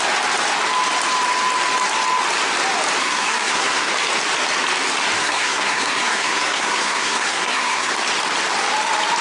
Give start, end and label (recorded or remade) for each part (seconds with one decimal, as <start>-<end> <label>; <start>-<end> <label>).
0.0-3.0 recorded; 3.0-3.9 remade; 3.9-5.2 recorded; 5.2-7.9 remade; 7.9-9.2 recorded